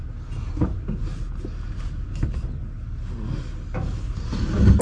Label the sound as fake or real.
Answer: real